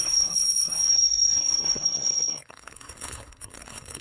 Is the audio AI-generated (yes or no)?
yes